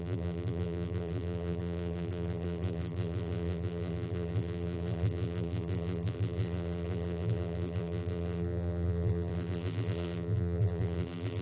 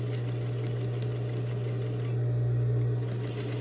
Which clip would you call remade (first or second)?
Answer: first